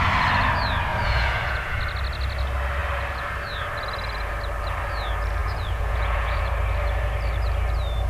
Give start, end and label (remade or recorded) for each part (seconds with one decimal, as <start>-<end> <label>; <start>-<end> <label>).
0.0-0.9 recorded; 0.9-1.8 remade; 1.8-5.4 recorded; 5.4-6.5 remade; 6.5-8.1 recorded

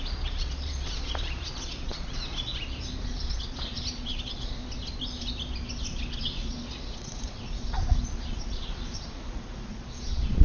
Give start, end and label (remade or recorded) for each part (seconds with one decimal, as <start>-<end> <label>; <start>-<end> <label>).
0.0-2.5 remade; 2.5-3.0 recorded; 3.0-4.6 remade; 4.6-6.2 recorded; 6.2-10.4 remade

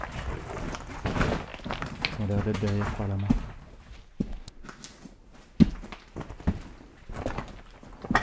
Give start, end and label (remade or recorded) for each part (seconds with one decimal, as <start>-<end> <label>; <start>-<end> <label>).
0.0-8.2 recorded